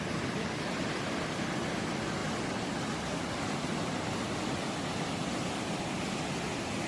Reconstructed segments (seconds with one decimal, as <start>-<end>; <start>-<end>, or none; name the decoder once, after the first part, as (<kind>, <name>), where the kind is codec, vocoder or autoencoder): 2.2-3.8 (vocoder, BigVGAN v2)